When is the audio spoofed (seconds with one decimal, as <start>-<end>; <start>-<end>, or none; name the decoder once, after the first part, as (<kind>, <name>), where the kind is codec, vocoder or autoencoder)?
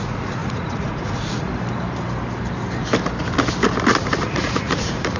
0.0-1.5 (vocoder, Vocos); 4.0-5.2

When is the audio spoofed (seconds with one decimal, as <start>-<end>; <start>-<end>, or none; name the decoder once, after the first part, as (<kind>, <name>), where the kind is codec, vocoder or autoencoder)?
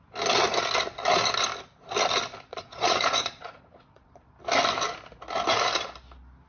2.5-4.3 (vocoder, Vocos)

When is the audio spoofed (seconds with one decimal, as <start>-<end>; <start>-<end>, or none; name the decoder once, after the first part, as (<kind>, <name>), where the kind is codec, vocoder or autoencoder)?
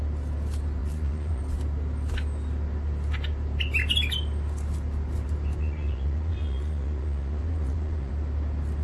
0.8-1.4 (vocoder, Vocos); 5.6-8.1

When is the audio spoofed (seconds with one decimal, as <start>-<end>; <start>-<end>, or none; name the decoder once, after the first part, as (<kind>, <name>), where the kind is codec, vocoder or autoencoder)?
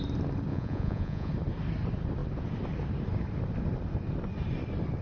0.5-1.3 (vocoder, Vocos)